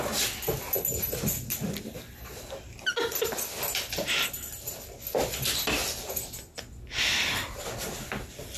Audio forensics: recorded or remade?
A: recorded